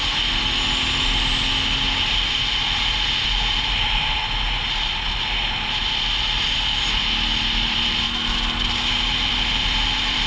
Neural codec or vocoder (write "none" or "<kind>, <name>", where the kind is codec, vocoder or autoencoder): none